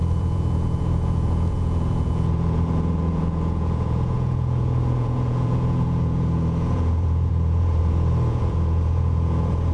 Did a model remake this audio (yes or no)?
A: yes